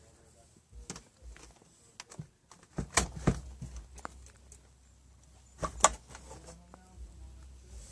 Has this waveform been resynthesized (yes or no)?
no